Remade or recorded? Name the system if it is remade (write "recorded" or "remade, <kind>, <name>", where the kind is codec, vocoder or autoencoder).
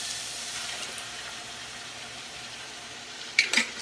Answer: remade, vocoder, BigVGAN v2